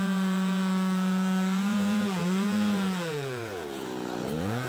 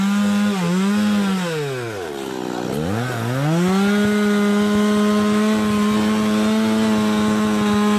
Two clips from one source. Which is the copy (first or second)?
first